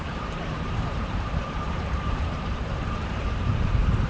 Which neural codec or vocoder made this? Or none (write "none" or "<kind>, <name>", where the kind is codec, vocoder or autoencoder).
vocoder, BigVGAN v2